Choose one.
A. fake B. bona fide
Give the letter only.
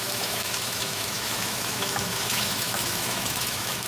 A